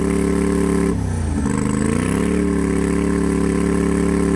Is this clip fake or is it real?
real